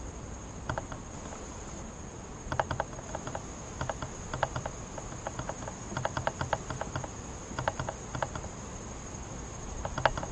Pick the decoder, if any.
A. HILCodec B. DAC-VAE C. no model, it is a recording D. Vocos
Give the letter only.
C